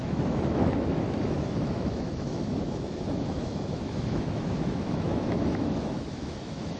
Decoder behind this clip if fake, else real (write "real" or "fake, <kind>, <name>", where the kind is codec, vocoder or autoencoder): fake, autoencoder, DAC-VAE